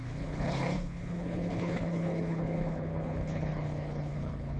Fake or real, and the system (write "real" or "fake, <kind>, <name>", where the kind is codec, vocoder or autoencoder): fake, codec, HILCodec